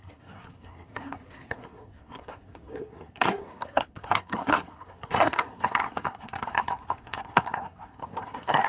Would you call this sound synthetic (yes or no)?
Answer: yes